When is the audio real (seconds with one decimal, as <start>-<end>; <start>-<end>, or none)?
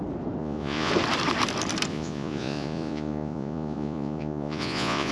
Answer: 0.0-0.4; 0.9-1.9